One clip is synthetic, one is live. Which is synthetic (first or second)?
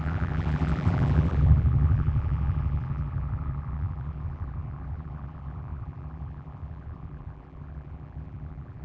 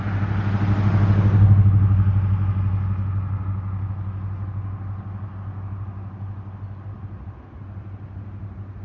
first